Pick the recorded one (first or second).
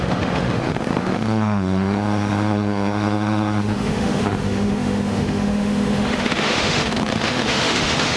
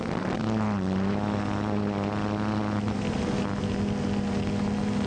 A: second